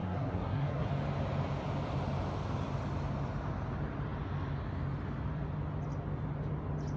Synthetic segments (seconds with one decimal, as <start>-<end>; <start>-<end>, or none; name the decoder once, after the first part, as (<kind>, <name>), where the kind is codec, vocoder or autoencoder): 0.0-0.9 (codec, SNAC)